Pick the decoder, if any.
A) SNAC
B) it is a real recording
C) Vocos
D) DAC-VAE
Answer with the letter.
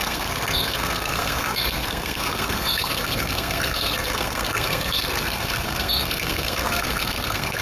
A